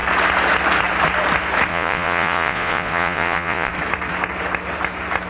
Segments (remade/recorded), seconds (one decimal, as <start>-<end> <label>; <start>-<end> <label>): 0.0-1.7 recorded; 1.7-3.7 remade; 3.7-5.3 recorded

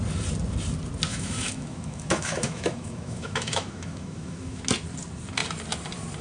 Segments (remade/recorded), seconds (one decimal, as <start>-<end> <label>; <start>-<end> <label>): 0.0-1.1 recorded; 1.1-4.6 remade; 4.6-6.2 recorded

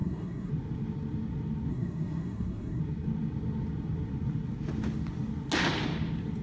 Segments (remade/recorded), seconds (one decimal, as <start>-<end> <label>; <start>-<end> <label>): 0.0-0.5 remade; 0.5-1.7 recorded; 1.7-2.8 remade; 2.8-6.4 recorded

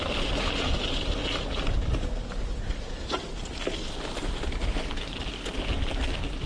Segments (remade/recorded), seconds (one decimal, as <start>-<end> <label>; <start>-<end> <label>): 0.0-6.5 recorded